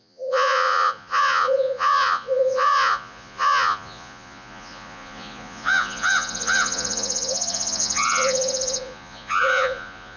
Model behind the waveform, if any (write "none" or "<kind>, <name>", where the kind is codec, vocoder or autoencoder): vocoder, Vocos